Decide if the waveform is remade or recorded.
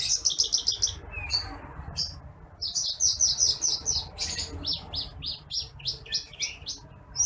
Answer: recorded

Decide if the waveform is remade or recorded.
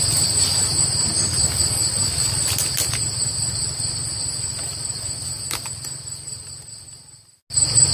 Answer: recorded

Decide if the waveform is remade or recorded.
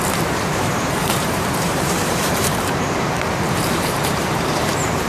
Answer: remade